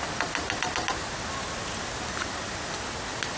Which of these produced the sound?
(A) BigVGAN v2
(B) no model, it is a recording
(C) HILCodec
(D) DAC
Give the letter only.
B